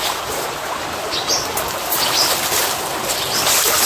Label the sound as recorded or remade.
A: recorded